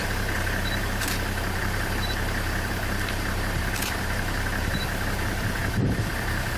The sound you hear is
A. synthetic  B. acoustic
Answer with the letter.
A